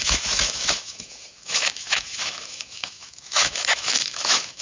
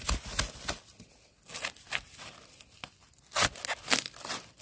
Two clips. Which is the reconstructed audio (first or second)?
first